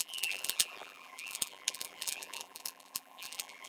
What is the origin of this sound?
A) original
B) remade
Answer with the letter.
B